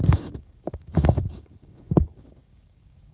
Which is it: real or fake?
fake